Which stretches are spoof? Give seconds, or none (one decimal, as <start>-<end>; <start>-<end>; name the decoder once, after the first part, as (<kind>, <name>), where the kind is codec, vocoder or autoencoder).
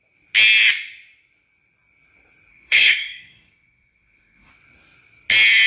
2.5-4.5 (codec, SNAC)